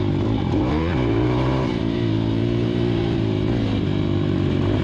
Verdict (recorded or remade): remade